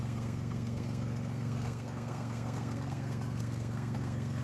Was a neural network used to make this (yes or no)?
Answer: yes